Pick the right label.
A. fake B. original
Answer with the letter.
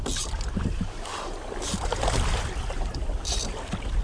A